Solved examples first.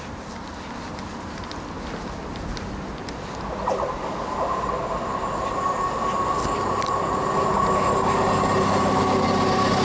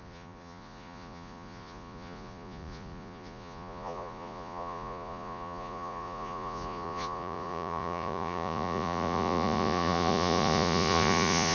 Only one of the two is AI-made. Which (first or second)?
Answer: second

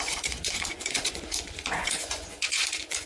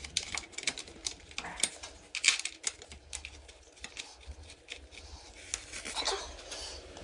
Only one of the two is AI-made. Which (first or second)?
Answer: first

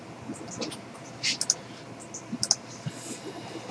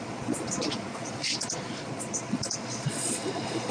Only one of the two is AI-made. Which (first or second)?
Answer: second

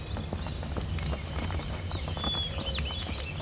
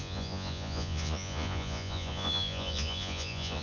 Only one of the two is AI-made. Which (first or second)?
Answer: second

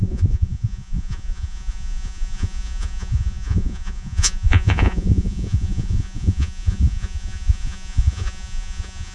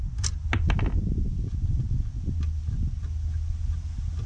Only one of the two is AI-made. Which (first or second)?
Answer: first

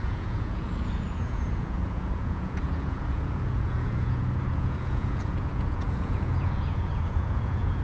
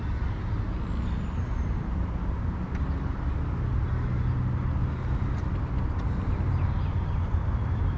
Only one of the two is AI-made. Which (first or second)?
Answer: first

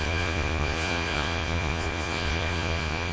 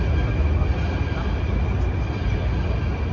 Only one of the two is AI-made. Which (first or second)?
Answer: first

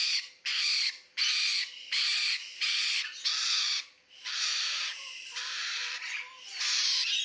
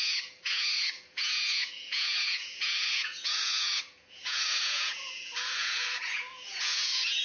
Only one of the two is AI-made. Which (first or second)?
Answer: second